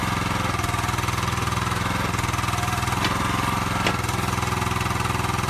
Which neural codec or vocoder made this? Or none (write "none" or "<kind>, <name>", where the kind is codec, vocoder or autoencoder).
none